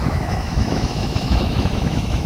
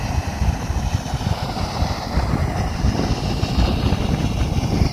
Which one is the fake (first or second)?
first